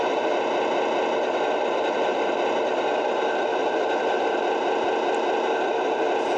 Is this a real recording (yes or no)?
yes